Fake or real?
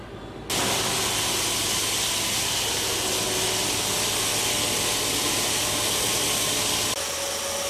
real